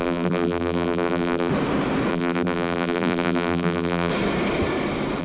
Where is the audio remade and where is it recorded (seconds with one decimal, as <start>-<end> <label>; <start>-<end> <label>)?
0.0-1.5 remade; 1.5-2.1 recorded; 2.1-4.1 remade; 4.1-5.2 recorded